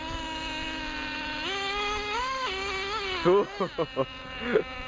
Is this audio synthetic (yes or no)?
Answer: no